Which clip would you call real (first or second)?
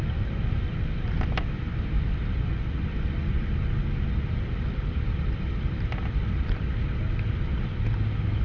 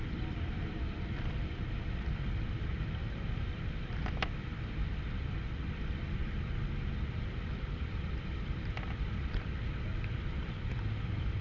first